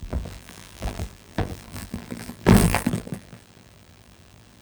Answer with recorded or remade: remade